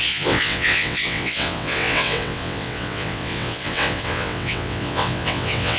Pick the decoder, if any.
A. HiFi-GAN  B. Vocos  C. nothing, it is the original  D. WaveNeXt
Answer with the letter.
D